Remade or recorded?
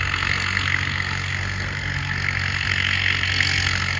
remade